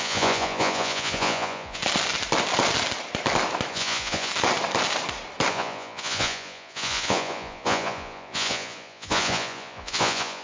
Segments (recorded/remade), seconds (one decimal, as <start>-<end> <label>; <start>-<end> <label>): 0.0-1.8 remade; 1.8-3.7 recorded; 3.7-4.3 remade; 4.3-5.5 recorded; 5.5-10.4 remade